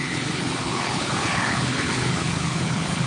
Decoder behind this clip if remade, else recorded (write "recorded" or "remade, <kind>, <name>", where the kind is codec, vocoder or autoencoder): remade, codec, HILCodec